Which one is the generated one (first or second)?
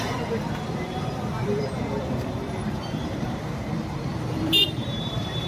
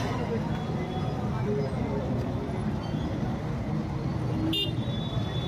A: first